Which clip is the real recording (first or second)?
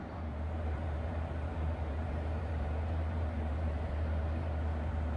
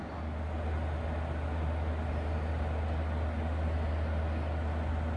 second